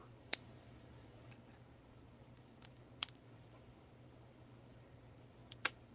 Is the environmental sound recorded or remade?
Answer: remade